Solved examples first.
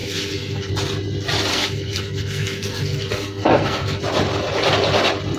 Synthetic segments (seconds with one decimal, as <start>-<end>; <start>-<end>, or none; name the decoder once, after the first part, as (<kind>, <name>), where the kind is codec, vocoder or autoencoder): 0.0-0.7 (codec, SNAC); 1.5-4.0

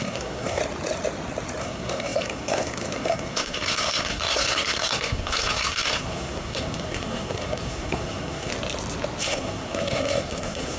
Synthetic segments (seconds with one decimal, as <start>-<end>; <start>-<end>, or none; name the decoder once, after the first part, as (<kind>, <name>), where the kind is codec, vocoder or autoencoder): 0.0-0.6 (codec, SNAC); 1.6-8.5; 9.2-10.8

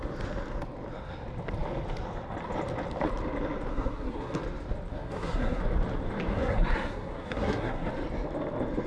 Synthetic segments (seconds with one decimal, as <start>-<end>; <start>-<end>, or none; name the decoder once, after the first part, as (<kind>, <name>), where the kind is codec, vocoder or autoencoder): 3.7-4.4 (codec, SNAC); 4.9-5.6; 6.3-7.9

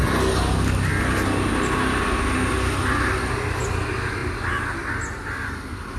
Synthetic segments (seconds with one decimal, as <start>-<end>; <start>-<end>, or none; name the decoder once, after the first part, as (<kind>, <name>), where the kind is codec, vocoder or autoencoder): none

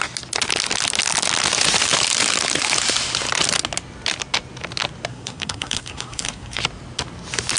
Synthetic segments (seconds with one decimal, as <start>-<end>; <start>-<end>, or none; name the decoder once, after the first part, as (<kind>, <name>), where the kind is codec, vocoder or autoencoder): 5.1-6.6 (codec, SNAC)

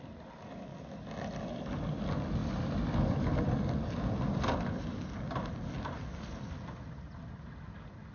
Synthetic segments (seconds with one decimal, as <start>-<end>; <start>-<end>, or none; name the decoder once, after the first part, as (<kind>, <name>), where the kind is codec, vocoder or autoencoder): none